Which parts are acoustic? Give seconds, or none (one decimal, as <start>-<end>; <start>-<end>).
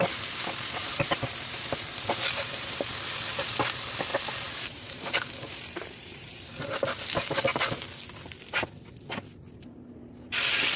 0.0-0.8; 2.9-4.1; 6.6-10.8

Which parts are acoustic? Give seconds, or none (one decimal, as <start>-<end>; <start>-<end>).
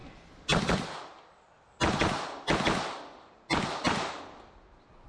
0.0-5.1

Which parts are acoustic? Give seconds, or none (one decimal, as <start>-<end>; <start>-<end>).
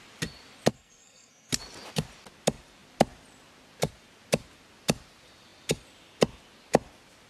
0.0-0.7; 1.5-7.3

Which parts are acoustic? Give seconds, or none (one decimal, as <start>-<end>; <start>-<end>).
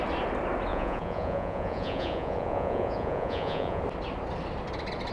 0.0-0.7; 3.8-5.1